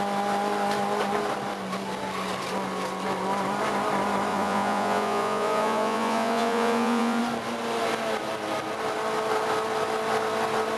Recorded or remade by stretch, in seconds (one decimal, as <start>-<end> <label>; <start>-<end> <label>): 0.0-4.3 recorded; 4.3-7.2 remade; 7.2-10.8 recorded